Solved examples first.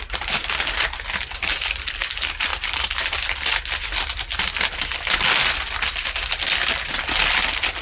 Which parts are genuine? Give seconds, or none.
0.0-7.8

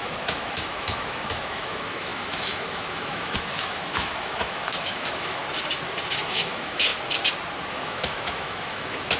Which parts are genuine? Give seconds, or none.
5.4-6.1; 6.9-7.7

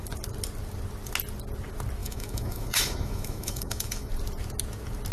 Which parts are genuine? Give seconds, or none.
0.0-2.0; 4.1-5.1

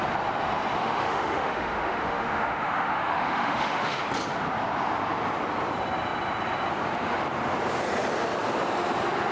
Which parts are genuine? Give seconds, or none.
0.0-0.8; 4.0-9.3

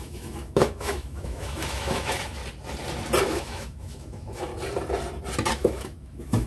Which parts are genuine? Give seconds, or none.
2.4-3.2; 4.5-5.5

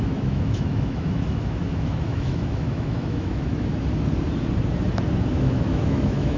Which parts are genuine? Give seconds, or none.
3.7-5.3

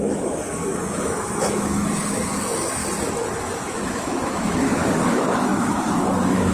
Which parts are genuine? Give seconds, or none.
2.8-3.4